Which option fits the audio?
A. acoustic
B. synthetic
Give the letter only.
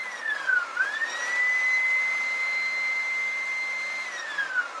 A